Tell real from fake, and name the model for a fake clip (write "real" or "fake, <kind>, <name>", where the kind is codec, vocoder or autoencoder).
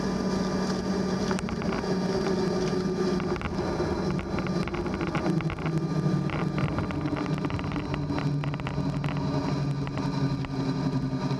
real